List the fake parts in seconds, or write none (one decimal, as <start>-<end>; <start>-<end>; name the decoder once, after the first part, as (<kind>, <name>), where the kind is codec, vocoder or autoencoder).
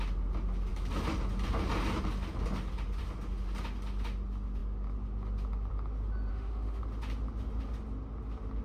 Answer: 6.3-6.8 (autoencoder, DAC-VAE)